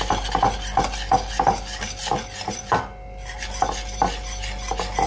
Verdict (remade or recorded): recorded